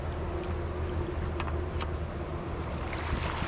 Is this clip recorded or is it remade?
recorded